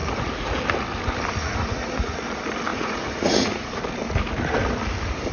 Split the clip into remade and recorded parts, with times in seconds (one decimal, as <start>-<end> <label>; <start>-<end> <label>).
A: 0.0-0.6 remade; 0.6-1.4 recorded; 1.4-2.2 remade; 2.2-2.7 recorded; 2.7-3.8 remade; 3.8-5.3 recorded